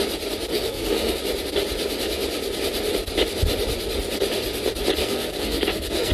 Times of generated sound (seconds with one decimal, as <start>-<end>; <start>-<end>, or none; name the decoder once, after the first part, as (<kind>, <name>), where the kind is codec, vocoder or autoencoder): 0.5-1.2 (codec, SNAC); 5.0-6.1